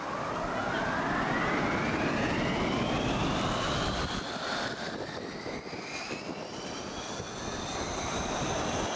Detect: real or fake real